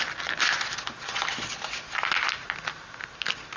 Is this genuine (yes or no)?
yes